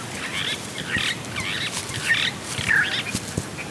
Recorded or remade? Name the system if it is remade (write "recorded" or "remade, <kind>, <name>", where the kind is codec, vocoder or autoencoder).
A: recorded